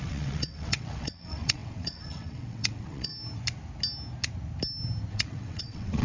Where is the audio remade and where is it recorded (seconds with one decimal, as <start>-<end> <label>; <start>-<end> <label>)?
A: 0.0-3.1 remade; 3.1-5.1 recorded; 5.1-6.0 remade